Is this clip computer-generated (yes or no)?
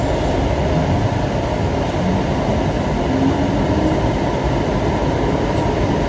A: no